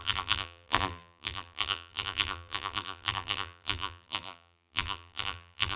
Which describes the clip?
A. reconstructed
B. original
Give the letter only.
A